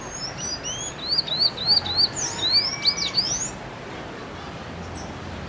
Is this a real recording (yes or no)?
yes